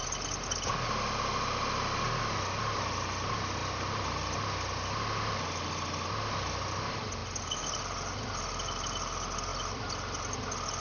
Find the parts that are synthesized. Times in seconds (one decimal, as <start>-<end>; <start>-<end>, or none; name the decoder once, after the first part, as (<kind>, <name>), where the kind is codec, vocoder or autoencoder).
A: none